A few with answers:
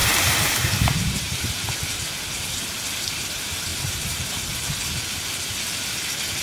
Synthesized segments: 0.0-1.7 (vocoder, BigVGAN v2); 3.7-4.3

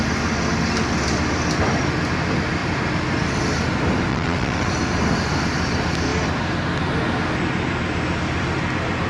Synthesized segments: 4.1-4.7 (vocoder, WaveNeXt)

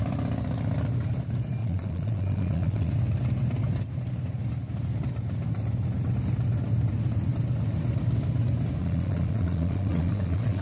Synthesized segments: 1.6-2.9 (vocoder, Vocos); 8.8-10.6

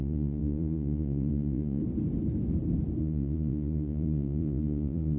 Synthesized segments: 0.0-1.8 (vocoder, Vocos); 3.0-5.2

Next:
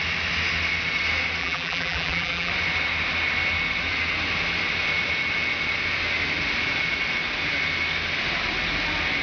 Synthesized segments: 1.4-2.5 (vocoder, BigVGAN v2)

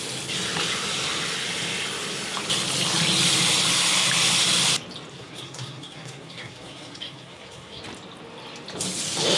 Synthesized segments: 5.1-7.8 (codec, SNAC)

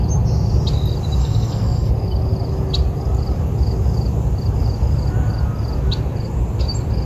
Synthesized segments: 1.2-1.9 (codec, SNAC)